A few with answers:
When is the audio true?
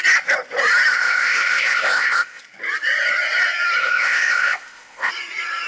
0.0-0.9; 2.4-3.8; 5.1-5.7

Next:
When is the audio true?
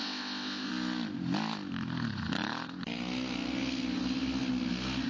0.7-5.1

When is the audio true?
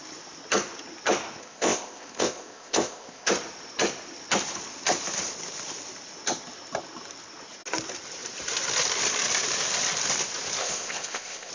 0.0-1.4; 3.3-10.6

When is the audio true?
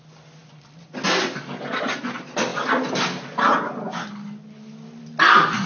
0.0-5.7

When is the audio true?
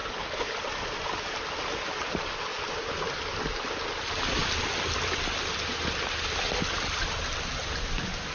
0.0-8.3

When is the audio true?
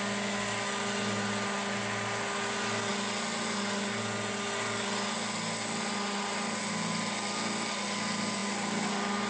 0.0-9.3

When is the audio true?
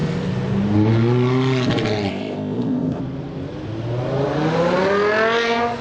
0.0-2.1; 3.0-5.8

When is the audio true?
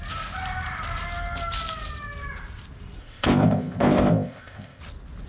0.0-3.0; 4.8-5.3